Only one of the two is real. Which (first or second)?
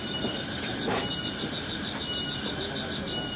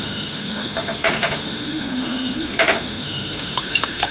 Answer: first